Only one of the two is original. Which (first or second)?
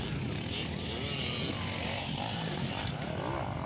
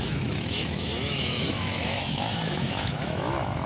first